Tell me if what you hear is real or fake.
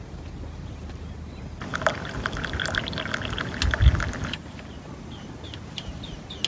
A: real